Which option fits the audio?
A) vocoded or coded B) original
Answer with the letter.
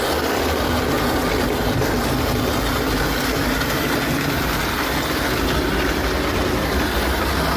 B